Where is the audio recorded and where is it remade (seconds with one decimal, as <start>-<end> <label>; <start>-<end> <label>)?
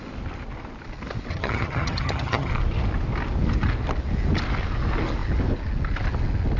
0.0-1.3 recorded; 1.3-2.5 remade; 2.5-6.6 recorded